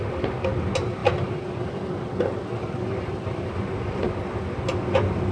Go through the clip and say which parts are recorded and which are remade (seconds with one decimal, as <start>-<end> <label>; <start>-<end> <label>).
0.0-5.3 recorded